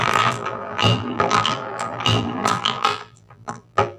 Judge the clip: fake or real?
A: fake